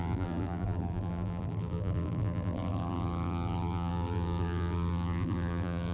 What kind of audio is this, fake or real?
fake